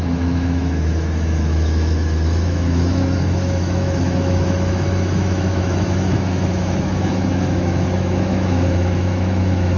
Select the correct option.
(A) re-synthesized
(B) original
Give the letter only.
A